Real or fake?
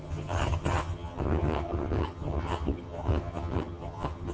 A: fake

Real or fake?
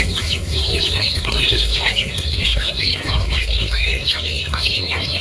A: fake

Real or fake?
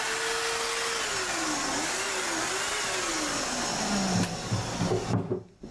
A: real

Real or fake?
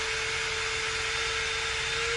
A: real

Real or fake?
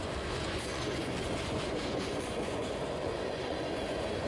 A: fake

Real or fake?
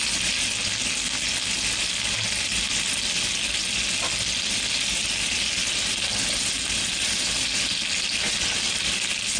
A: real